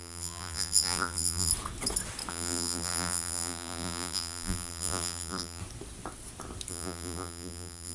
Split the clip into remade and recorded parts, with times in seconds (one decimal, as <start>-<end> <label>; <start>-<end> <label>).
0.0-1.5 remade; 1.5-2.3 recorded; 2.3-5.6 remade; 5.6-6.7 recorded; 6.7-7.9 remade